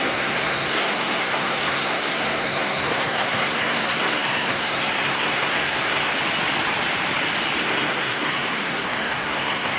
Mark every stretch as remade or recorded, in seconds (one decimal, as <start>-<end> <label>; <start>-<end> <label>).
0.0-6.1 remade; 6.1-7.6 recorded; 7.6-9.8 remade